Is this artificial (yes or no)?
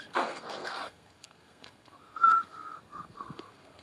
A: yes